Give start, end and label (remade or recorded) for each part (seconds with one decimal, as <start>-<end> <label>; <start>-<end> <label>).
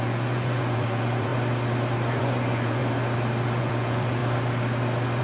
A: 0.0-1.3 remade; 1.3-2.1 recorded; 2.1-2.8 remade; 2.8-3.6 recorded; 3.6-4.2 remade; 4.2-5.2 recorded